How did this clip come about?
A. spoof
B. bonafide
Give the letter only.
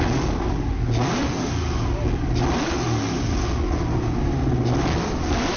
B